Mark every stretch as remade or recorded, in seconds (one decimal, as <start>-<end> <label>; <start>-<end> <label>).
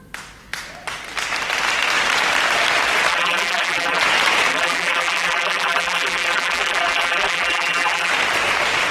0.0-3.1 recorded; 3.1-4.0 remade; 4.0-4.5 recorded; 4.5-8.1 remade; 8.1-8.9 recorded